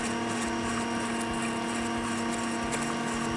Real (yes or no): yes